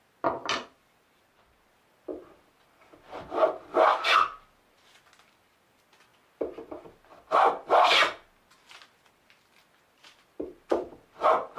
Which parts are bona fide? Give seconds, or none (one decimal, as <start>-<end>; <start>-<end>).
0.0-11.6